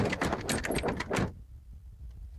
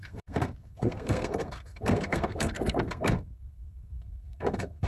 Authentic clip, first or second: first